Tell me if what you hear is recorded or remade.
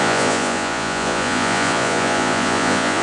remade